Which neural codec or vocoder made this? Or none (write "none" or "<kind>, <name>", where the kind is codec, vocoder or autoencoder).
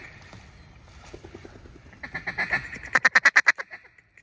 none